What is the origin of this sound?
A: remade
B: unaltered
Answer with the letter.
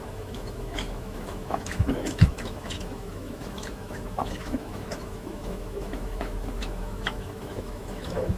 A